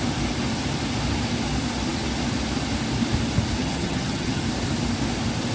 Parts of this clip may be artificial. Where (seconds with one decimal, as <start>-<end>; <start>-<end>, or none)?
3.6-4.4